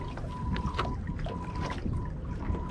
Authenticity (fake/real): real